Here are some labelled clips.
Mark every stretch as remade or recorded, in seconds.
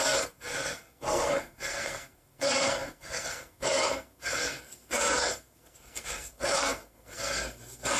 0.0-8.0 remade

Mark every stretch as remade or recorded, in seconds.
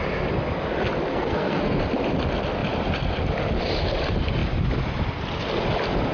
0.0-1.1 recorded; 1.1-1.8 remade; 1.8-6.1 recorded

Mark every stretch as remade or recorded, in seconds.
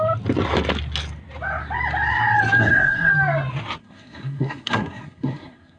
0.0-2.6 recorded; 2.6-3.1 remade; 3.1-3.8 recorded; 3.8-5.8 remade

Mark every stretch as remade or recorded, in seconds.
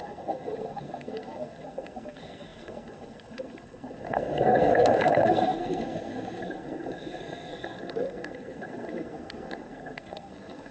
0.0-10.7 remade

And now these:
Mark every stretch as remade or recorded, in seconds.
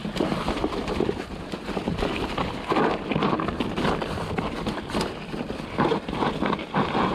0.0-7.1 recorded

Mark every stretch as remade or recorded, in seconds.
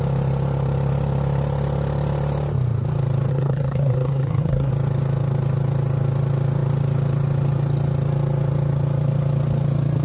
0.0-3.3 recorded; 3.3-4.7 remade; 4.7-10.0 recorded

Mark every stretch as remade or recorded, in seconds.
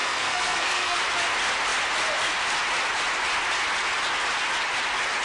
0.0-1.0 remade; 1.0-5.2 recorded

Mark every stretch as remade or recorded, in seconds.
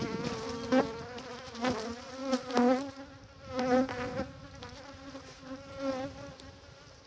0.0-7.1 recorded